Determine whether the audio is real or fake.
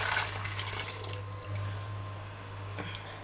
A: real